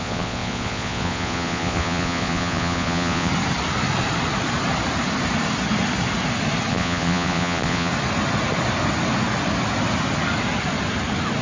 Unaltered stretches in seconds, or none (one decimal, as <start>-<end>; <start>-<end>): 3.3-6.7; 7.9-11.4